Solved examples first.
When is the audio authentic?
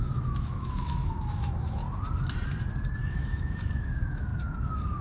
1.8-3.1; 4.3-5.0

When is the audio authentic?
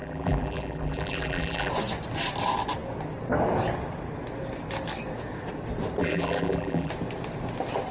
1.7-6.0; 6.9-7.9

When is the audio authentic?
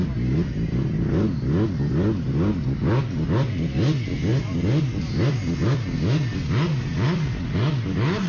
0.0-8.3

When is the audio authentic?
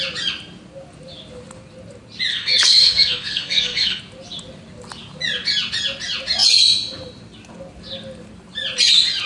0.0-2.3; 4.0-9.3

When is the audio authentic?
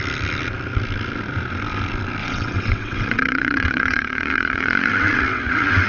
0.0-2.2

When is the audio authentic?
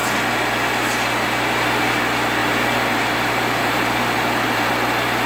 0.0-2.4; 4.7-5.3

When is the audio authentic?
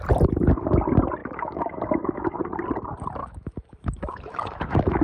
0.0-1.2; 2.4-3.2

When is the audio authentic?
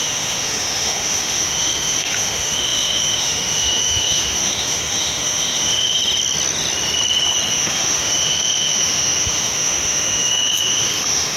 6.0-7.5